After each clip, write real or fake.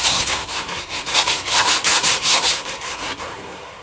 fake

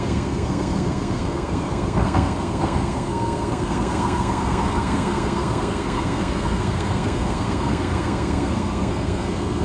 fake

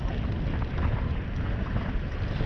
real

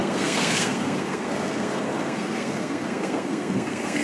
fake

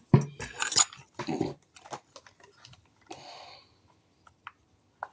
real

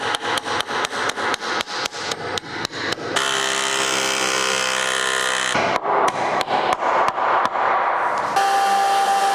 real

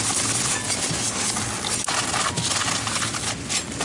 real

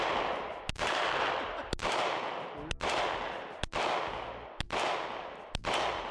real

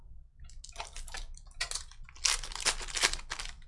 real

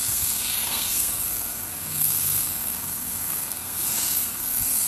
fake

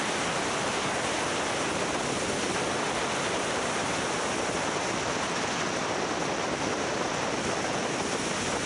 real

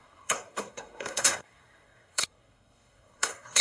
fake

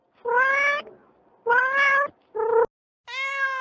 real